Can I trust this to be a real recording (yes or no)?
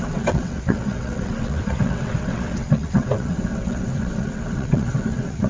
no